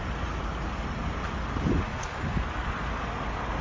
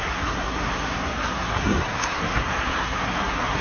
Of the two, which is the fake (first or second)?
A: second